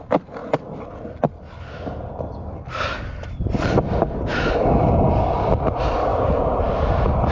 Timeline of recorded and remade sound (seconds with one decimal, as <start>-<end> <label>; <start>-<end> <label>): 0.0-4.3 recorded; 4.3-4.9 remade; 4.9-7.3 recorded